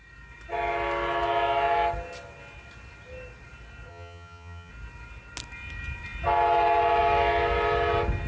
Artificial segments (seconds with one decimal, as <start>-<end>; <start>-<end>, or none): 3.9-4.7